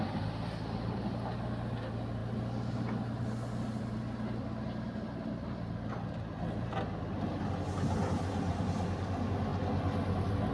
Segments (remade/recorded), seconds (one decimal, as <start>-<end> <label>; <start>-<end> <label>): 0.0-10.5 recorded

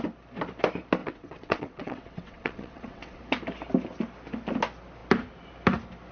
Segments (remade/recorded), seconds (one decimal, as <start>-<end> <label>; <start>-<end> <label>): 0.0-1.0 recorded; 1.0-3.2 remade; 3.2-6.1 recorded

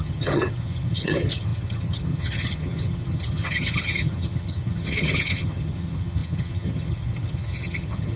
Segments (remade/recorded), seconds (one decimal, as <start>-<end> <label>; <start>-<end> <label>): 0.0-8.2 remade

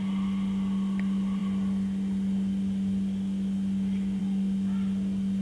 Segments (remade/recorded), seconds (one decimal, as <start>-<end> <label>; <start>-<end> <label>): 0.0-5.4 recorded